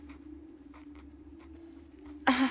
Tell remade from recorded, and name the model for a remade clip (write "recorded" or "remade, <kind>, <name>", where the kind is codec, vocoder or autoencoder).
remade, vocoder, BigVGAN v2